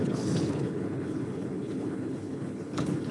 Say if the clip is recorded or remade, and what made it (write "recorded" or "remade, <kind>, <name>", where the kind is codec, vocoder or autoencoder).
remade, codec, HILCodec